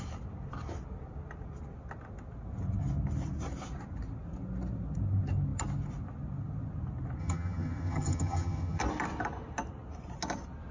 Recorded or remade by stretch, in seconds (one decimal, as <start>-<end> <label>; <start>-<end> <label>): 0.0-7.2 recorded; 7.2-8.8 remade; 8.8-10.7 recorded